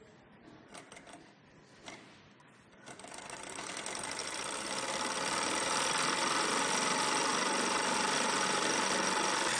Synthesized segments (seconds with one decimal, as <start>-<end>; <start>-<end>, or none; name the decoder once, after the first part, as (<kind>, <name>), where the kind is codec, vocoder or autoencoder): 4.2-6.5 (vocoder, BigVGAN v2); 7.3-8.6